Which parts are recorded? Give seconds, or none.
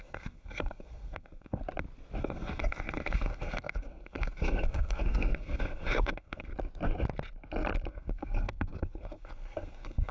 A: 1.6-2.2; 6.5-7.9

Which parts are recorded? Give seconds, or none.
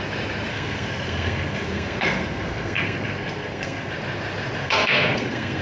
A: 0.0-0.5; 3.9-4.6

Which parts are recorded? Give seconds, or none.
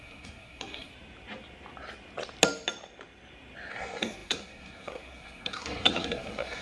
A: 0.9-3.7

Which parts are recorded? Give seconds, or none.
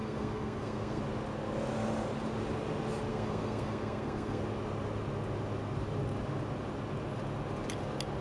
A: 1.0-3.1; 4.4-8.2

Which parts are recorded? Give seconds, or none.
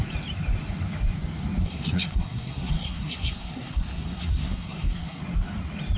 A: 0.0-1.6; 5.2-6.0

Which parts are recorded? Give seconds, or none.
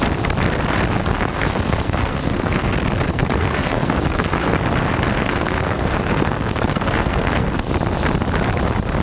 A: 0.0-1.0; 2.7-3.1; 4.6-5.2; 7.7-9.0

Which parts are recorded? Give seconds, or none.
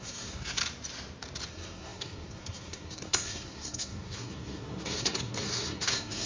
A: 0.6-1.5